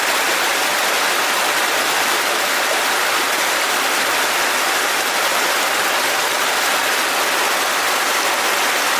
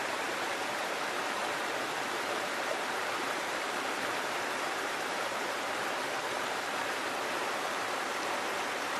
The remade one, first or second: second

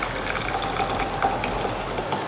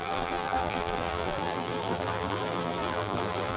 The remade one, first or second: second